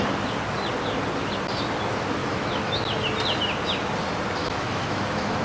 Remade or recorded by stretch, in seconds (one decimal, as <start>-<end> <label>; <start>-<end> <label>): 0.0-2.2 recorded; 2.2-2.8 remade; 2.8-4.4 recorded; 4.4-5.4 remade